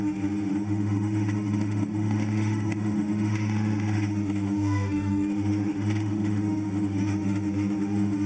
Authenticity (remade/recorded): remade